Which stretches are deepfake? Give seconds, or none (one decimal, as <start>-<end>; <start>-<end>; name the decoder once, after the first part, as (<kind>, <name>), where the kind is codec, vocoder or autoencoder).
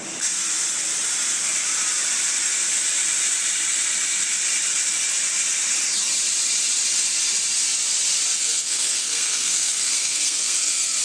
8.4-11.0 (codec, SNAC)